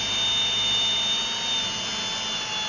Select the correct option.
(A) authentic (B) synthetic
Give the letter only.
A